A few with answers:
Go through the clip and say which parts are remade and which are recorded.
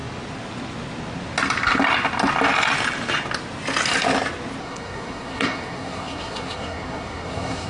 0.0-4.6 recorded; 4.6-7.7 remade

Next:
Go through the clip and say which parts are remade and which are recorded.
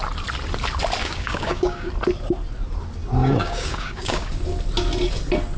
0.0-1.0 recorded; 1.0-1.9 remade; 1.9-3.2 recorded; 3.2-4.3 remade; 4.3-5.6 recorded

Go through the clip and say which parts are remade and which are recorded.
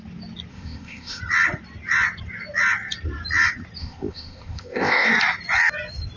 0.0-0.5 recorded; 0.5-1.2 remade; 1.2-3.8 recorded; 3.8-5.1 remade; 5.1-6.2 recorded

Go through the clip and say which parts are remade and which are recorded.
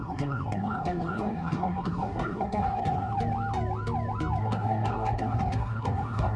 0.0-3.1 remade; 3.1-4.4 recorded; 4.4-6.4 remade